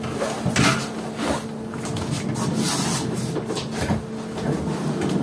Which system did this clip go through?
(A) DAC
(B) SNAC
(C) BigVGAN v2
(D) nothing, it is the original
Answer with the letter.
D